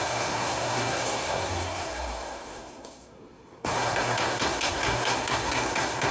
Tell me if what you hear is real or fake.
fake